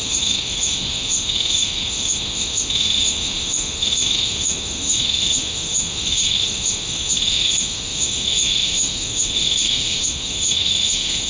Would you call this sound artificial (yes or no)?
yes